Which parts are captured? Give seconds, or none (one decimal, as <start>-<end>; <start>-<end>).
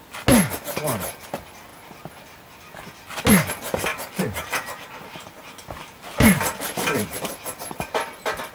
0.0-3.9; 7.3-8.5